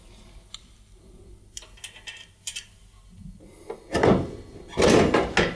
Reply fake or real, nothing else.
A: real